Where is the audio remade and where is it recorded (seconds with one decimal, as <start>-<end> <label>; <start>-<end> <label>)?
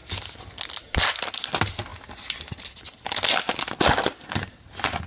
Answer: 0.0-5.1 recorded